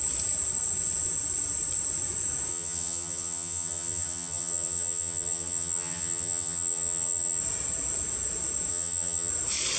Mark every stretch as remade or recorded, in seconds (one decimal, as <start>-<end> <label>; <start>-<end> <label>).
0.0-2.5 recorded; 2.5-7.4 remade; 7.4-8.7 recorded; 8.7-9.3 remade; 9.3-9.8 recorded